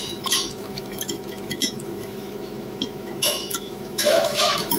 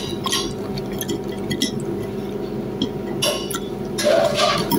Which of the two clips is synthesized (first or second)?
first